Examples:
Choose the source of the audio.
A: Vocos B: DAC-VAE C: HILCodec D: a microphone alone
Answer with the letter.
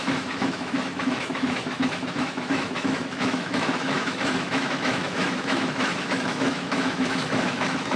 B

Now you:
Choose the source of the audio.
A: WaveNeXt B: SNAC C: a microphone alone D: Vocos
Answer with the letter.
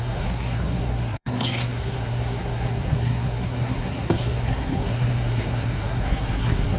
B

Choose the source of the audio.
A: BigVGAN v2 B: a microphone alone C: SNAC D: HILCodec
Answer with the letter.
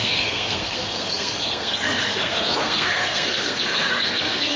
C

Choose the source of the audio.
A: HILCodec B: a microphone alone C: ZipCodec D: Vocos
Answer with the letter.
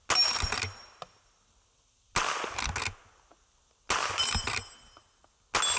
B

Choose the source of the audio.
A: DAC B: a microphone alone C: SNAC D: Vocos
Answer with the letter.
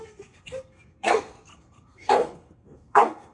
C